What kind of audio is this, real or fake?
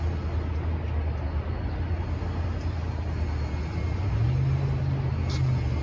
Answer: real